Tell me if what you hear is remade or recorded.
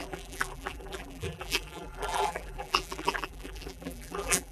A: remade